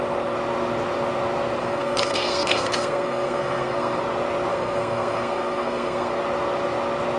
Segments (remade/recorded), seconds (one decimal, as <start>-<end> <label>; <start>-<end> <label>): 0.0-1.6 recorded; 1.6-4.0 remade; 4.0-4.5 recorded; 4.5-6.1 remade; 6.1-7.2 recorded